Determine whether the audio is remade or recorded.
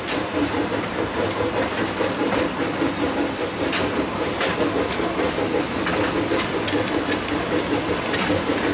recorded